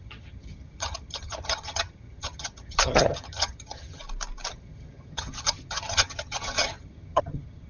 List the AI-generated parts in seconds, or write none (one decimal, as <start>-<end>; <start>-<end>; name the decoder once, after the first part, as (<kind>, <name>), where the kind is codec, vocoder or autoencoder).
0.0-4.0 (vocoder, HiFi-GAN); 4.5-7.7